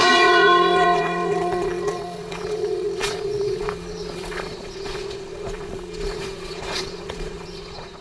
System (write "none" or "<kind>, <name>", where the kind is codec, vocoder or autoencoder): vocoder, Vocos